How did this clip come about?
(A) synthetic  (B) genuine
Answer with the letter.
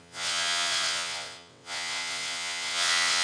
A